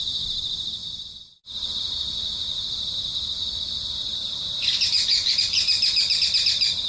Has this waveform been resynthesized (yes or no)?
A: no